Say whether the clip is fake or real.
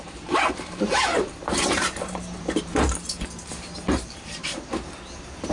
fake